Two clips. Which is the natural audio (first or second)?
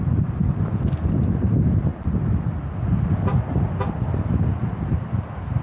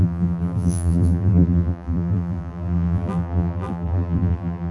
first